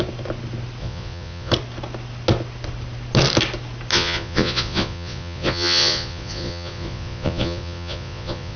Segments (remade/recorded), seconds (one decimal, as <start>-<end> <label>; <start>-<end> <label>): 0.0-0.8 recorded; 0.8-1.5 remade; 1.5-3.9 recorded; 3.9-8.6 remade